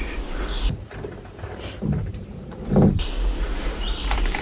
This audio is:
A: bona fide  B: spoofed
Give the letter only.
B